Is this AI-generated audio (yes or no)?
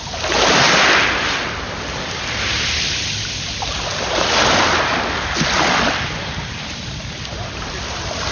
no